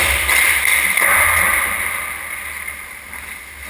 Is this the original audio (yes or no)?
yes